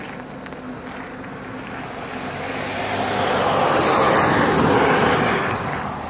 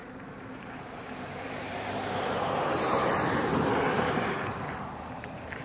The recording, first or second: first